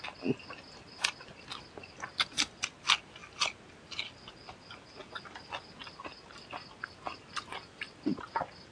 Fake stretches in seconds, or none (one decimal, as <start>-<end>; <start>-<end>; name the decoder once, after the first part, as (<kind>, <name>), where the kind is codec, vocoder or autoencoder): none